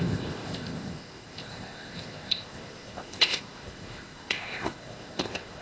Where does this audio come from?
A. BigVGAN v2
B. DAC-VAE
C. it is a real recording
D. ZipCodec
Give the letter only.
D